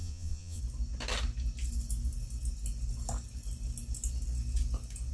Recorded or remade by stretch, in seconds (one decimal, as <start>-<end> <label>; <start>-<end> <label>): 0.0-0.6 remade; 0.6-5.1 recorded